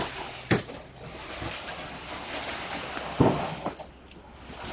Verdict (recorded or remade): recorded